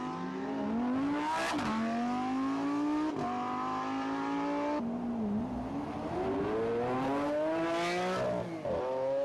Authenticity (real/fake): real